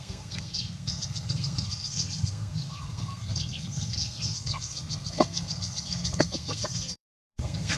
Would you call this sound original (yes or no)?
no